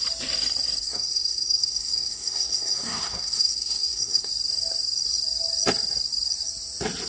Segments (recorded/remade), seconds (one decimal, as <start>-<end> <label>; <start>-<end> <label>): 0.0-0.8 recorded; 0.8-4.3 remade; 4.3-7.1 recorded